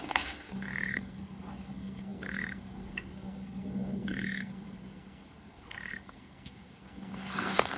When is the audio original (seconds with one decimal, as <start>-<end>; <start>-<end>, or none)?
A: none